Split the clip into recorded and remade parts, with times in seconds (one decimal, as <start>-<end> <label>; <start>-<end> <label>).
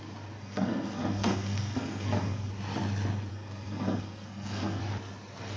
0.0-0.4 recorded; 0.4-2.5 remade; 2.5-3.3 recorded; 3.3-4.8 remade; 4.8-5.6 recorded